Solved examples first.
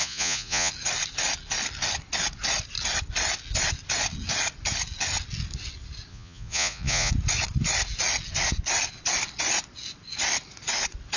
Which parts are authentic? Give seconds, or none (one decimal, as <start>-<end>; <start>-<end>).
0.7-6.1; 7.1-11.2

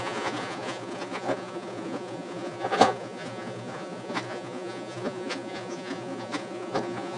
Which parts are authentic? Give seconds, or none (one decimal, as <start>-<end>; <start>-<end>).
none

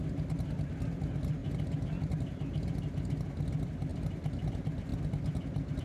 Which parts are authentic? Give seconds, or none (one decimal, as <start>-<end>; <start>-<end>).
0.0-5.8

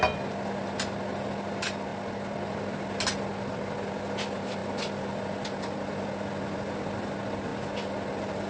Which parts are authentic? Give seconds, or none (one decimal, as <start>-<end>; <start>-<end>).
0.0-8.5

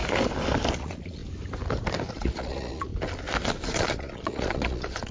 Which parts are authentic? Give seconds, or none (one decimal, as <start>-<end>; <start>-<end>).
0.0-0.7; 1.2-2.1; 2.9-3.7

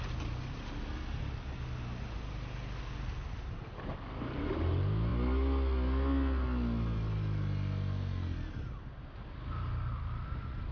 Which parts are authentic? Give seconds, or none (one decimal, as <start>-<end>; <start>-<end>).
0.0-10.7

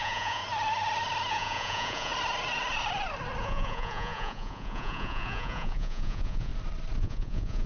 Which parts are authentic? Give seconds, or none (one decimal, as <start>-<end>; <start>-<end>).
0.4-1.3; 2.1-3.4; 6.5-7.0